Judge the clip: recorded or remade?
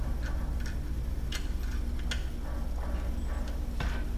recorded